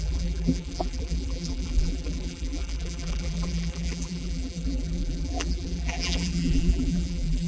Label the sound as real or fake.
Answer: fake